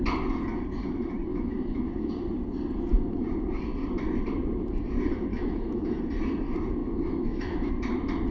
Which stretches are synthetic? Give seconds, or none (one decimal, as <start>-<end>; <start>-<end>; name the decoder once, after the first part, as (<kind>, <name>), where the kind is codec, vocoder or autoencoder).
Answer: 1.3-2.1 (autoencoder, DAC-VAE); 5.3-6.0; 6.8-7.7